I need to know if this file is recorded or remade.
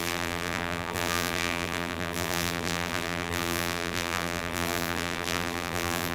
remade